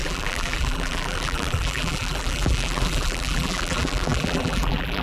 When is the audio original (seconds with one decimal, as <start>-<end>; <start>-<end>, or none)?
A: none